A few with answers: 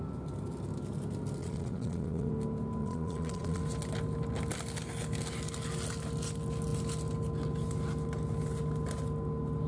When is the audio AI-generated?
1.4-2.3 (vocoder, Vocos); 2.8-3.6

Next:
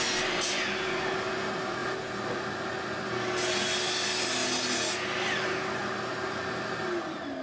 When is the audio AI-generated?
none

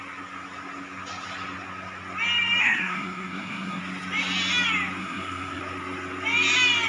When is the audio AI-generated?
2.6-3.8 (codec, SNAC); 5.0-5.6